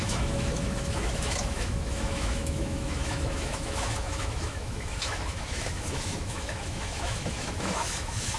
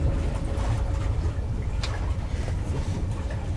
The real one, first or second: second